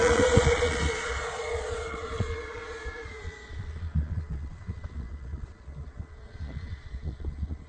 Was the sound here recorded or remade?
remade